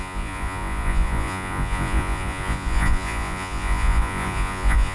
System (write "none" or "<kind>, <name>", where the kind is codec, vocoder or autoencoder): vocoder, Vocos